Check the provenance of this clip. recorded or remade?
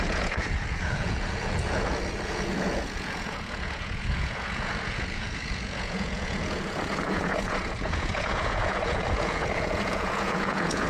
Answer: remade